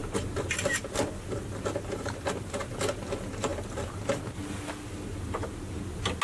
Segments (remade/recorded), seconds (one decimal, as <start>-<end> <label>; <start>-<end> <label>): 0.0-6.2 recorded